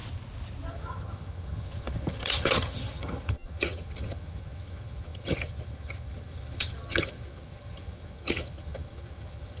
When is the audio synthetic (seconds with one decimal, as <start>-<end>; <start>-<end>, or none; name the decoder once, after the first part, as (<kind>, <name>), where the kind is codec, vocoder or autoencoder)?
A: 0.7-9.6 (vocoder, HiFi-GAN)